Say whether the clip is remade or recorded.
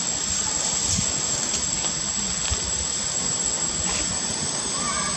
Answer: recorded